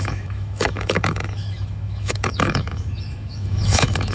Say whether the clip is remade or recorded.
remade